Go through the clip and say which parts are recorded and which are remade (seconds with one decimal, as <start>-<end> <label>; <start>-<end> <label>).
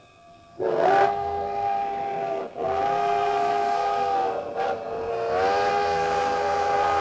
0.0-5.1 remade; 5.1-5.7 recorded; 5.7-7.0 remade